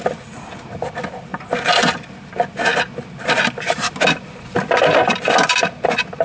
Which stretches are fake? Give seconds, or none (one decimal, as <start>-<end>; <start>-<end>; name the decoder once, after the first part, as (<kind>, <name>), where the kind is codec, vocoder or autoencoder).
none